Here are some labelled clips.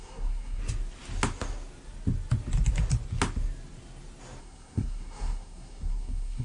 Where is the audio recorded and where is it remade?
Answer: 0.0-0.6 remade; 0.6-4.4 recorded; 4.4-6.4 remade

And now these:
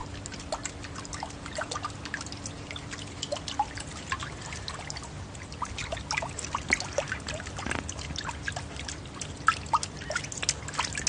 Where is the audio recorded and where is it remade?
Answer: 0.0-11.1 recorded

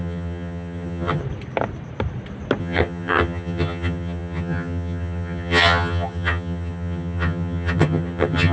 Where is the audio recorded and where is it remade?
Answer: 0.0-1.2 remade; 1.2-2.6 recorded; 2.6-8.5 remade